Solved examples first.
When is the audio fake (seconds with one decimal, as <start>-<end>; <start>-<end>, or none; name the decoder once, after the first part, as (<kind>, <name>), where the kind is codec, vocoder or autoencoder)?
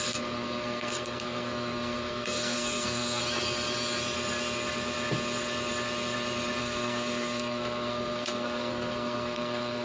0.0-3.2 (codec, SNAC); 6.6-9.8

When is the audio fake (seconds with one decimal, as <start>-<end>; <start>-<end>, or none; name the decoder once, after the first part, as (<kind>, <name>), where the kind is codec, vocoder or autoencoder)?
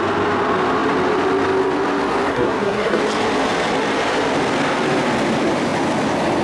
2.3-3.0 (codec, SNAC)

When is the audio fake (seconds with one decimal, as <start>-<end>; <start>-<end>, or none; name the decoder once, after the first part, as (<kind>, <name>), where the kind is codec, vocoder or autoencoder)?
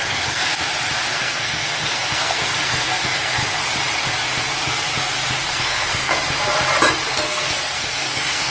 0.0-0.5 (codec, SNAC); 1.1-3.4; 5.5-6.1; 7.1-8.5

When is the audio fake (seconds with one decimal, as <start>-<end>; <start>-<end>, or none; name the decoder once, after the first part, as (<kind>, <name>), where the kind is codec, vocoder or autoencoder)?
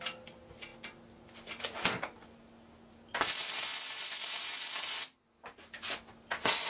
none